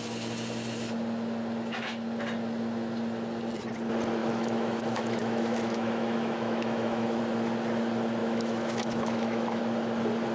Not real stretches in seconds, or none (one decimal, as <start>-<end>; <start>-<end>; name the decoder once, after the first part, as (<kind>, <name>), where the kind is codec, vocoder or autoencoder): 4.2-7.2 (autoencoder, DAC-VAE); 8.2-9.6